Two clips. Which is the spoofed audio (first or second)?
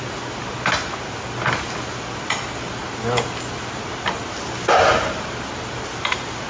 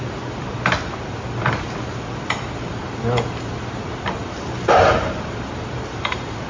second